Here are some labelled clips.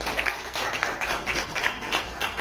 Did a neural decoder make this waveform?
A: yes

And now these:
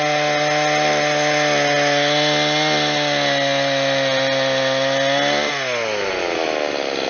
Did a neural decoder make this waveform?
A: no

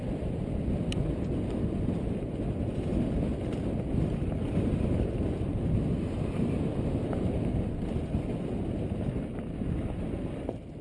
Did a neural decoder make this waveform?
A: no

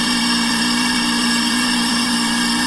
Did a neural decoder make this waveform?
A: yes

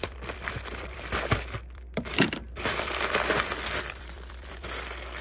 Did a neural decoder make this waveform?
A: yes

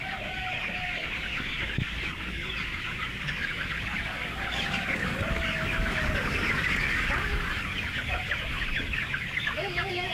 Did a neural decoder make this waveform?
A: yes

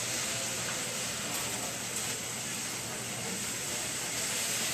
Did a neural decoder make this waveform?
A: no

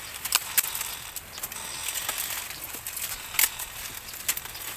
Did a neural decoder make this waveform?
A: no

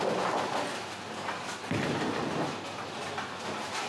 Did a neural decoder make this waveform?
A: no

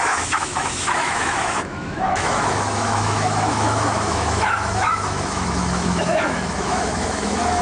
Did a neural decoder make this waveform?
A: yes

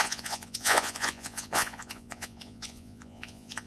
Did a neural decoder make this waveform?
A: yes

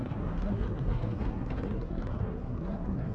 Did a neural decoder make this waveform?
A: yes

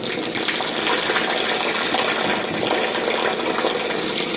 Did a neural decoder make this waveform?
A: no